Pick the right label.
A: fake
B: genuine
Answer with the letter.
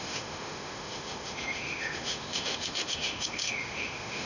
A